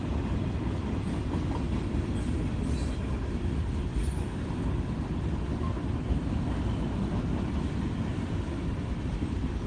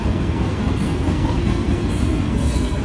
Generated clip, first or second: second